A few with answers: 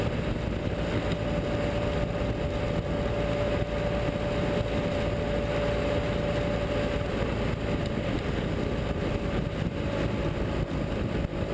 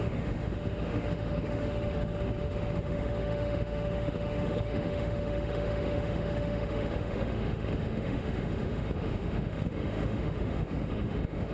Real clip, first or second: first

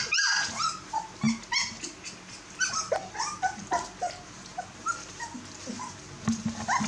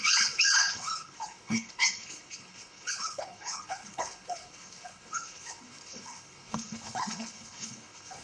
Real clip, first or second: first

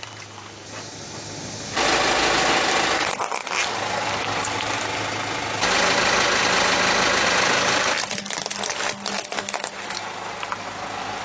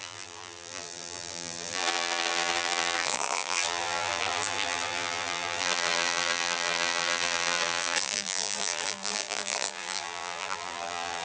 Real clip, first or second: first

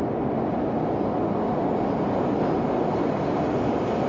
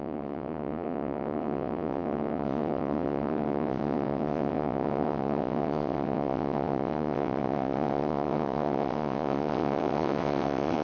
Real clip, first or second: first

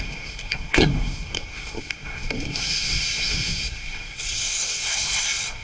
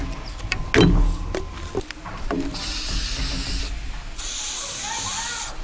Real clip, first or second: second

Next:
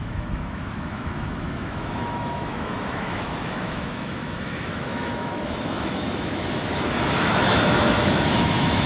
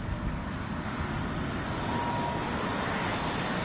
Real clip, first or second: second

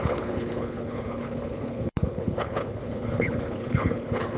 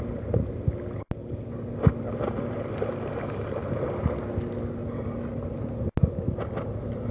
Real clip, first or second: second